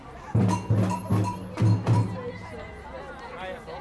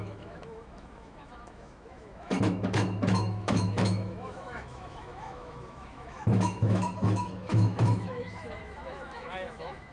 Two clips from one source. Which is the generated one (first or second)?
second